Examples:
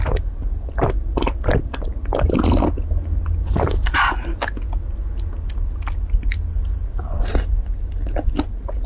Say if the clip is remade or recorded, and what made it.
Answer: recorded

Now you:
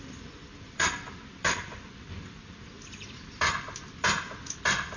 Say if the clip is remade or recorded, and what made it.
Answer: recorded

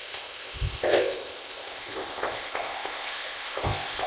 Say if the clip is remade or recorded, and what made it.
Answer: remade, codec, ZipCodec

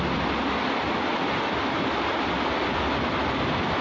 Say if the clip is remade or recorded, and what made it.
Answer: remade, vocoder, BigVGAN v2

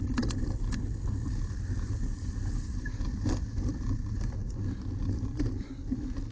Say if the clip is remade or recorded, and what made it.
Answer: recorded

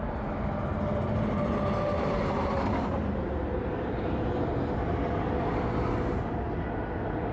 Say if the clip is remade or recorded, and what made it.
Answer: recorded